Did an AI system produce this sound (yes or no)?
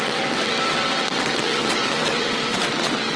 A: yes